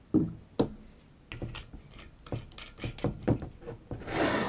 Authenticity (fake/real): real